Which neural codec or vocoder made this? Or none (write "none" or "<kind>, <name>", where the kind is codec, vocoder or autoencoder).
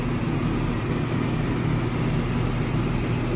none